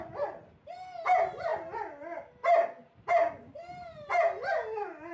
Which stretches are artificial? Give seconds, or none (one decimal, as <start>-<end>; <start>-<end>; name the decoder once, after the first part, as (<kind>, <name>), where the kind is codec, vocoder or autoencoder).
none